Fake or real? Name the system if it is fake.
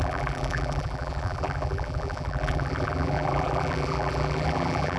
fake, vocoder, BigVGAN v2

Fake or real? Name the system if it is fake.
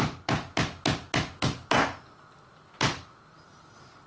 real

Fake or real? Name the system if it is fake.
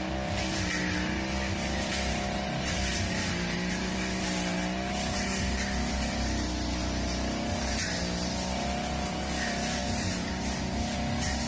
real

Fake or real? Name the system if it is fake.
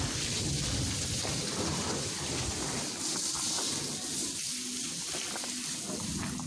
real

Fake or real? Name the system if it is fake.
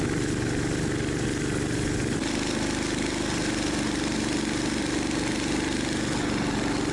real